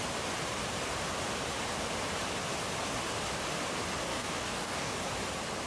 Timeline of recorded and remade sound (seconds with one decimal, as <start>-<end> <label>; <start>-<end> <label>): 0.0-4.1 recorded; 4.1-5.0 remade; 5.0-5.7 recorded